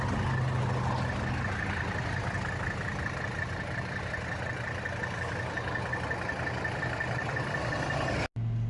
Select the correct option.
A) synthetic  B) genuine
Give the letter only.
B